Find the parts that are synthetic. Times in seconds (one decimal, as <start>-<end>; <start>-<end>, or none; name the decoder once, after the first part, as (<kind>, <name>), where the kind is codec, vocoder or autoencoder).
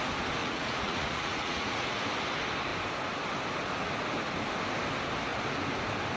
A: 0.4-2.0 (vocoder, Vocos)